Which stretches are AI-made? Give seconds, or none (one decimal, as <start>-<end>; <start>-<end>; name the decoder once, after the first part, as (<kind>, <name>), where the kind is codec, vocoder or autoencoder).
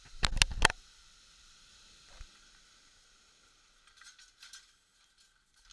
0.5-1.7 (vocoder, BigVGAN v2)